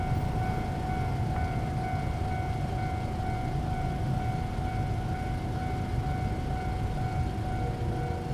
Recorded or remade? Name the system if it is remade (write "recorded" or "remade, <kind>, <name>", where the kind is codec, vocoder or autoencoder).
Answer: recorded